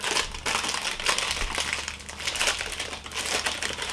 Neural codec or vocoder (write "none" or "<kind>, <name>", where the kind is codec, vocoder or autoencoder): none